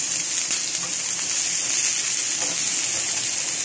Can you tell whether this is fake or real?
real